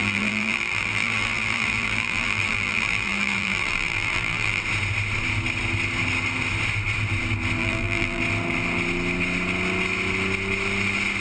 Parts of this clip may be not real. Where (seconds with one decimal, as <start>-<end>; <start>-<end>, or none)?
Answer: 0.0-4.6; 7.6-8.2